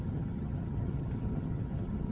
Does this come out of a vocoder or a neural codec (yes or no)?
yes